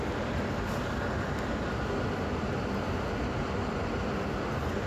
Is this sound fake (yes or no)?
no